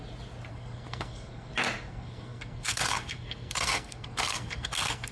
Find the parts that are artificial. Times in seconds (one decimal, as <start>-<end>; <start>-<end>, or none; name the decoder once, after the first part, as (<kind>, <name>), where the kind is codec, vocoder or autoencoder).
0.5-1.5 (codec, SNAC); 1.9-5.1